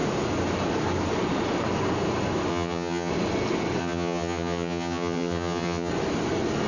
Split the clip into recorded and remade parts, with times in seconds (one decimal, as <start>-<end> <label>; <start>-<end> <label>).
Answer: 0.0-2.5 recorded; 2.5-3.1 remade; 3.1-3.8 recorded; 3.8-5.9 remade; 5.9-6.7 recorded